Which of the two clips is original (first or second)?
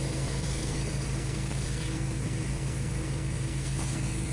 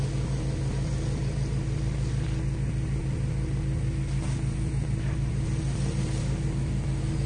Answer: second